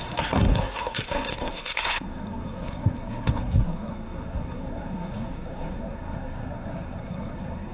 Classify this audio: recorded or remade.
remade